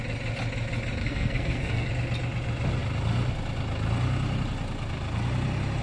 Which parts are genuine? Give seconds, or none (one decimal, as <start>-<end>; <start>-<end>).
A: 0.0-1.0; 1.9-5.8